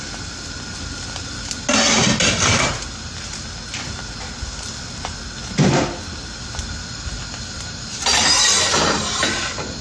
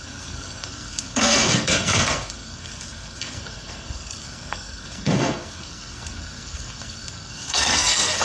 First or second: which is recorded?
first